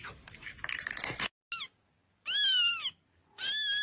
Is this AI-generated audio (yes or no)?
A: no